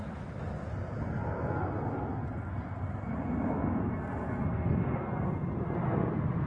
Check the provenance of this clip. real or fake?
real